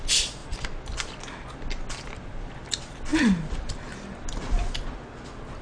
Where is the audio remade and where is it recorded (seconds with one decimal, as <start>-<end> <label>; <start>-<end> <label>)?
0.0-5.6 recorded